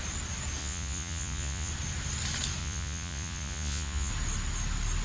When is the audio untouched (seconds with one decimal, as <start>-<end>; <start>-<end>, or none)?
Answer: 0.0-0.6; 1.7-2.6; 4.1-5.0